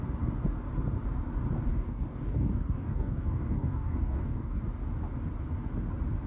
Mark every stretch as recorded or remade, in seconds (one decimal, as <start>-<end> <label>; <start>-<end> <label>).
0.0-1.7 recorded; 1.7-4.6 remade; 4.6-6.3 recorded